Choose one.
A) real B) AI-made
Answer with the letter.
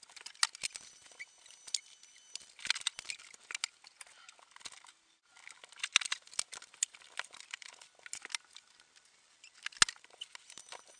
A